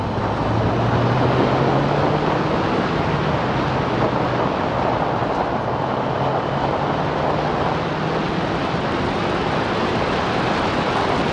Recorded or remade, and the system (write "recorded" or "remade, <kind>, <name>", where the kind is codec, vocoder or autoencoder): recorded